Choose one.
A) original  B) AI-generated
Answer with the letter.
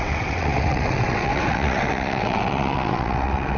B